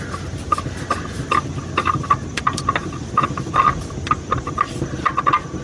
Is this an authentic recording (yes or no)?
yes